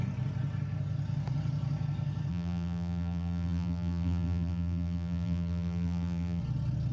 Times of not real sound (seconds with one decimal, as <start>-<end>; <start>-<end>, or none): 2.3-6.4